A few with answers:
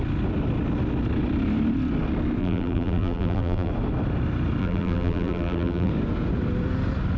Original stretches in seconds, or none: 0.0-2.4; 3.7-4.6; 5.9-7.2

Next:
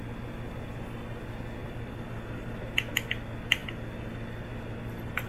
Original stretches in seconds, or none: 0.0-1.6; 2.6-3.6; 4.1-5.3

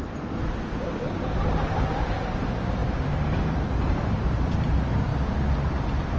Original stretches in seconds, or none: 5.1-6.2

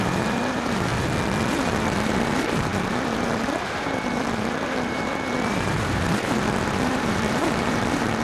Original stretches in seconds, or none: 0.9-1.5

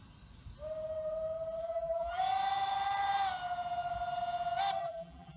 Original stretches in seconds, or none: 0.0-1.6; 2.2-4.8